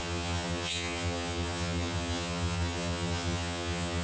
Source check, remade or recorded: remade